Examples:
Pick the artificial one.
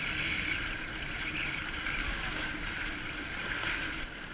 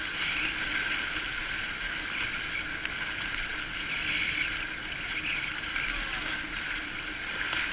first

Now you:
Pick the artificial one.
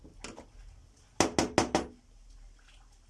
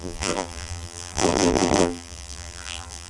second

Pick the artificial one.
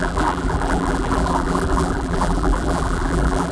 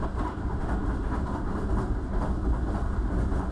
first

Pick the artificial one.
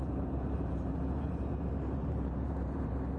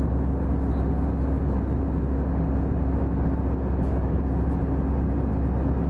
first